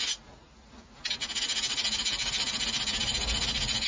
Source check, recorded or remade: recorded